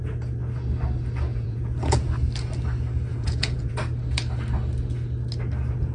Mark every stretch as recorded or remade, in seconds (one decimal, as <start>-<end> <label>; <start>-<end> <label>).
0.0-1.3 recorded; 1.3-2.1 remade; 2.1-3.1 recorded; 3.1-3.7 remade; 3.7-5.9 recorded